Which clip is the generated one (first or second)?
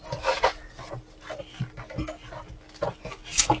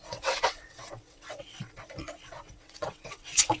second